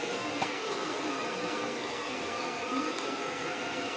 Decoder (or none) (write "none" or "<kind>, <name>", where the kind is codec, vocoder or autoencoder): codec, SNAC